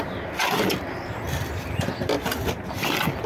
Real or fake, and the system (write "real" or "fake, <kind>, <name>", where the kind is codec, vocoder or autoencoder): real